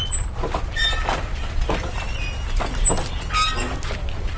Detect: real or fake real